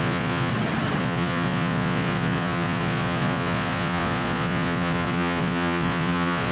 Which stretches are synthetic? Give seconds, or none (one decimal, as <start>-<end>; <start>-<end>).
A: 0.0-0.5; 1.0-6.5